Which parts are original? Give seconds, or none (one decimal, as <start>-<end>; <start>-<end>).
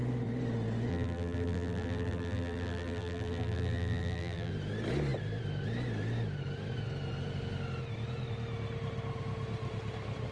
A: 0.0-0.9; 4.5-10.3